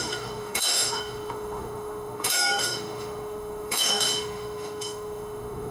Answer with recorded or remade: remade